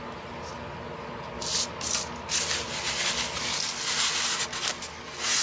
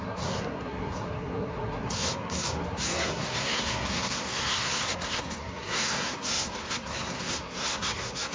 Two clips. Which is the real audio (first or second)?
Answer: first